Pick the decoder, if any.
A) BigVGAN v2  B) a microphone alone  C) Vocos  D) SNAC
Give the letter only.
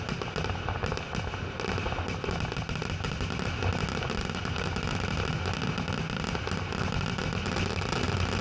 B